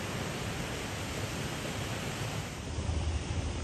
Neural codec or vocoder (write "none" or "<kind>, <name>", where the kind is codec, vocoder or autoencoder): none